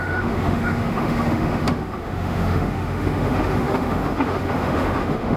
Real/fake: fake